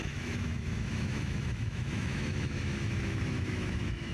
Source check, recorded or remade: remade